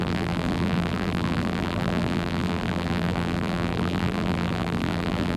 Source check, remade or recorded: remade